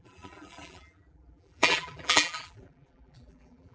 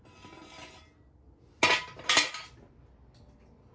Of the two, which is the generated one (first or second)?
first